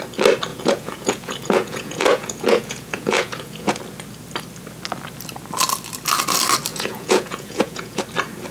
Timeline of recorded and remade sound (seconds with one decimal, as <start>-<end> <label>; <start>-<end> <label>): 0.0-0.5 recorded; 0.5-3.8 remade; 3.8-6.7 recorded; 6.7-8.0 remade; 8.0-8.5 recorded